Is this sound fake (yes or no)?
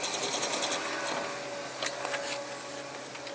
no